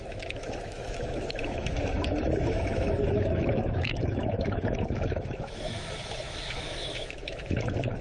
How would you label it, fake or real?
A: fake